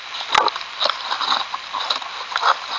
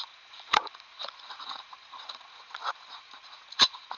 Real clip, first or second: first